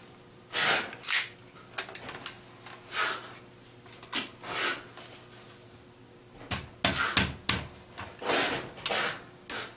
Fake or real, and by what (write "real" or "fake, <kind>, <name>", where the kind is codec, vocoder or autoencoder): real